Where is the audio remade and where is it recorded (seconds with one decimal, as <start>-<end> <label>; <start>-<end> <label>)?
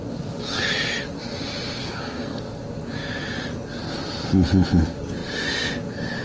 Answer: 0.0-1.8 recorded; 1.8-2.4 remade; 2.4-6.2 recorded